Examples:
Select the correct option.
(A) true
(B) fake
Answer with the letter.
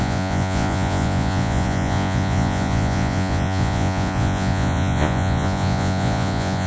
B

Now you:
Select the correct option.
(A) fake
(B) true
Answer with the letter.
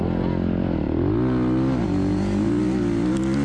B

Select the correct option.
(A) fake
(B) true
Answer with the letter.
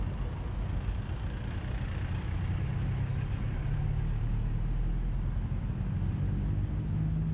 B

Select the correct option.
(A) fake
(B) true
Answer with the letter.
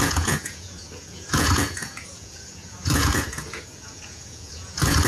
A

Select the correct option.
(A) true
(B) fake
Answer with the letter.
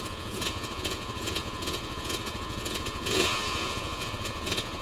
B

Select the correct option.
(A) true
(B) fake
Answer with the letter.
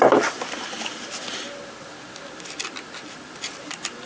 A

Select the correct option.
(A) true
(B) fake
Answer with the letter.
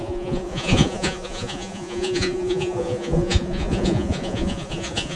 B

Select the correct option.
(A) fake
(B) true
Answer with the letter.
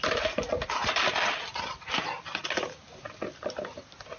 B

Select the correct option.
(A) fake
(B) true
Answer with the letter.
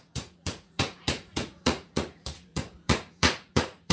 A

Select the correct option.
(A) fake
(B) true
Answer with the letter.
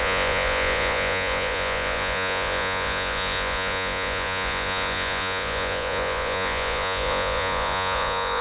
A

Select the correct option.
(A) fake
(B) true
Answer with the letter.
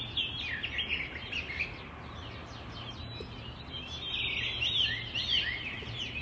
B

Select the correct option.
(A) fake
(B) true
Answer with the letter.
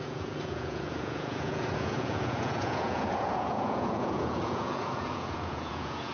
A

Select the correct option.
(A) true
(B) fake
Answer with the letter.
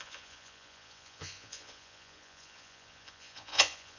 B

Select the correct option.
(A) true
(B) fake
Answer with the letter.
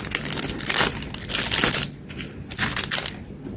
A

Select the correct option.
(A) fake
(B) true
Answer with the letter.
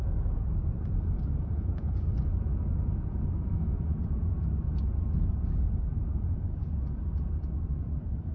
A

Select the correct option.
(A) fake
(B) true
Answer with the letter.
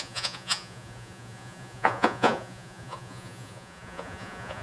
A